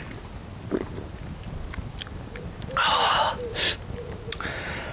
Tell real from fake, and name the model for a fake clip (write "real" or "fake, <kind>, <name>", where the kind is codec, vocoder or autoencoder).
real